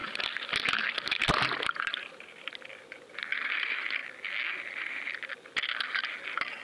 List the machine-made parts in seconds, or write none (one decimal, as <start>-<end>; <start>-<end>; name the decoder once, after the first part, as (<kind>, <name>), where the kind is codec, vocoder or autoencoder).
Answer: none